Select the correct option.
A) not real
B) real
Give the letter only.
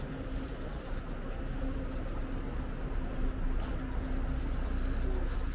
B